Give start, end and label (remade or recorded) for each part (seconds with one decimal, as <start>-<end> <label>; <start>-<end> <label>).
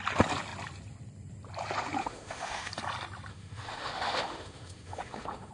0.0-2.0 recorded; 2.0-2.7 remade; 2.7-3.3 recorded; 3.3-5.5 remade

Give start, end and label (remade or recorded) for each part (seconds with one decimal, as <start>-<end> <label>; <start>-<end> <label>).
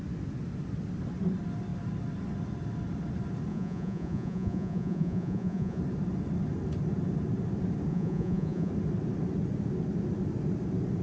0.0-3.5 recorded; 3.5-5.8 remade; 5.8-7.9 recorded; 7.9-8.7 remade; 8.7-11.0 recorded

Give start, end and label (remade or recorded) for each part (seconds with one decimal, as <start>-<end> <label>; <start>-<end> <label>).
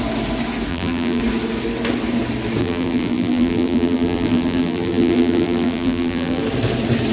0.0-0.7 recorded; 0.7-1.2 remade; 1.2-2.6 recorded; 2.6-6.4 remade; 6.4-7.1 recorded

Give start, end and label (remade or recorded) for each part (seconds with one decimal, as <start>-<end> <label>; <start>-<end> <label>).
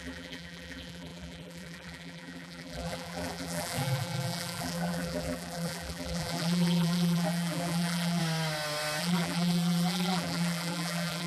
0.0-8.2 remade; 8.2-9.0 recorded; 9.0-11.3 remade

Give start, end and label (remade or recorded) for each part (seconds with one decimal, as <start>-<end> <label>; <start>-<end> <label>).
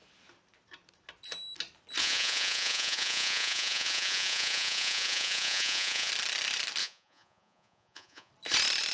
0.0-2.0 recorded; 2.0-6.1 remade; 6.1-6.8 recorded; 6.8-8.3 remade; 8.3-8.9 recorded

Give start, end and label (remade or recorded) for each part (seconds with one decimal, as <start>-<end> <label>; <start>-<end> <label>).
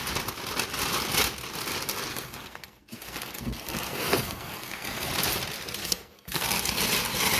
0.0-2.1 recorded; 2.1-5.1 remade; 5.1-5.8 recorded; 5.8-6.8 remade; 6.8-7.4 recorded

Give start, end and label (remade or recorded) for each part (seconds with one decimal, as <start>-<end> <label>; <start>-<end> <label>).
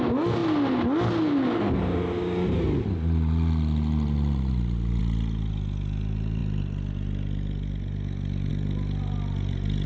0.0-9.9 recorded